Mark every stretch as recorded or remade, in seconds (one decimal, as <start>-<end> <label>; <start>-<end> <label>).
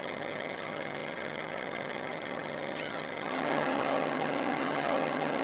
0.0-5.4 remade